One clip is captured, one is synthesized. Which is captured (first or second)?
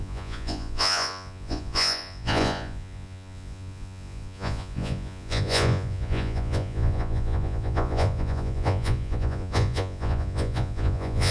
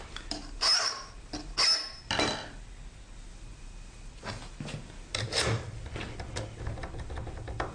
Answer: second